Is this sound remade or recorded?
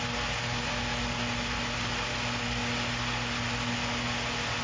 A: recorded